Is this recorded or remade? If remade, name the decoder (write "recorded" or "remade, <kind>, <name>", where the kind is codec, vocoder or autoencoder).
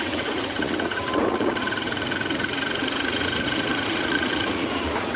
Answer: remade, vocoder, Vocos